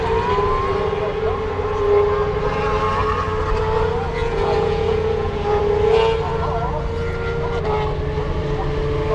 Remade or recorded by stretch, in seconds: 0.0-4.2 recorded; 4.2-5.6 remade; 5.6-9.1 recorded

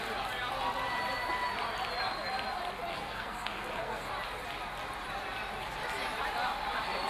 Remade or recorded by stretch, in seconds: 0.0-2.9 recorded; 2.9-4.1 remade; 4.1-7.1 recorded

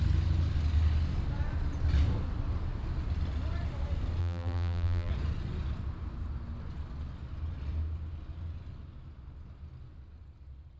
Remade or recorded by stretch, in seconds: 0.0-4.2 recorded; 4.2-5.1 remade; 5.1-10.8 recorded

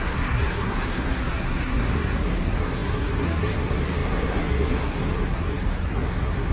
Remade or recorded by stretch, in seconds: 0.0-6.5 remade